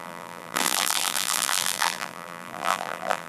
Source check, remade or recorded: remade